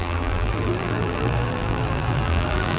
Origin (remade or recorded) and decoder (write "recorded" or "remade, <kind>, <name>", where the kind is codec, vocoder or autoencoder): remade, vocoder, BigVGAN v2